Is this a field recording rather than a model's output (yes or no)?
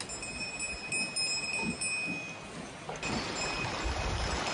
yes